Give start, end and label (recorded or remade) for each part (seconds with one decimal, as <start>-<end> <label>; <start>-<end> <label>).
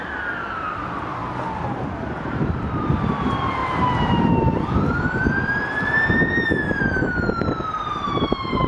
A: 0.0-3.6 remade; 3.6-6.8 recorded; 6.8-8.7 remade